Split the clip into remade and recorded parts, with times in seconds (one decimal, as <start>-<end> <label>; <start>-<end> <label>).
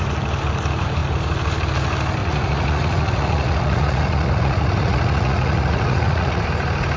0.0-2.2 recorded; 2.2-6.4 remade; 6.4-7.0 recorded